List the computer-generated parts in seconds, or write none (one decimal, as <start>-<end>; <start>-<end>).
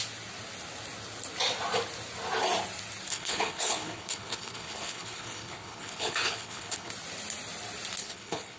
3.1-6.9; 8.0-8.6